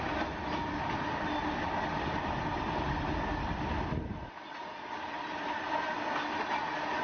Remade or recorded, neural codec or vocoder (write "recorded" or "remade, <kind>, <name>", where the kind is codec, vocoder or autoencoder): recorded